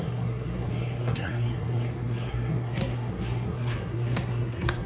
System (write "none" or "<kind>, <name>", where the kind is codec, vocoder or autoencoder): codec, SNAC